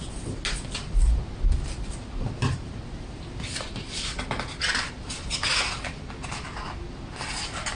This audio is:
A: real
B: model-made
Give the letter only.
A